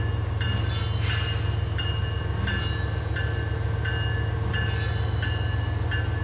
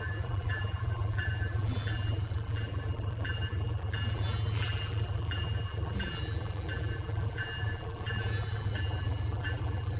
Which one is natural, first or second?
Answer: first